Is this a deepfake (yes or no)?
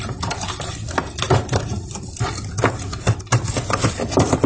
no